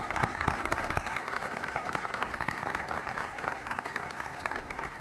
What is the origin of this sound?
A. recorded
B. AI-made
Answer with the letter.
B